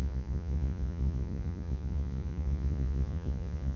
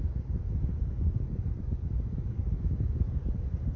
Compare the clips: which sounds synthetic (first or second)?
first